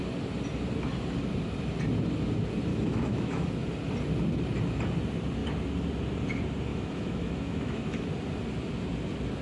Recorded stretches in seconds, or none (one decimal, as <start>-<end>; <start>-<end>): 0.0-2.7; 3.5-6.7; 8.1-9.4